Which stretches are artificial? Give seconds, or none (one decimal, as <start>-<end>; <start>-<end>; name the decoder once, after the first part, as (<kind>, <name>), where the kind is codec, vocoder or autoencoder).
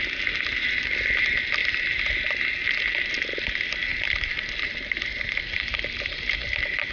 none